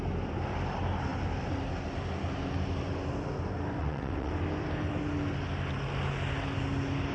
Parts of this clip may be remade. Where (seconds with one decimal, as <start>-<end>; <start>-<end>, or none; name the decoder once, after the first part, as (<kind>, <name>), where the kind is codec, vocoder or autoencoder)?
3.8-4.3 (vocoder, WaveNeXt)